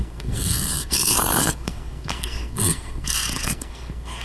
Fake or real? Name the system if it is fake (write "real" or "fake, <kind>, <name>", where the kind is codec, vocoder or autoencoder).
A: fake, codec, SNAC